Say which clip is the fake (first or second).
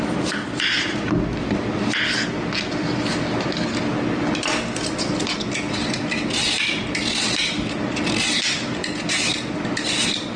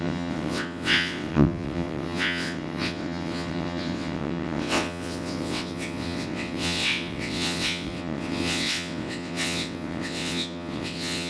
second